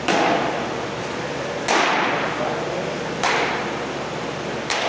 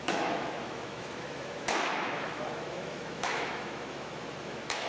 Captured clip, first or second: first